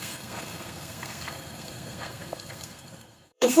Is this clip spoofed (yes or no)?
yes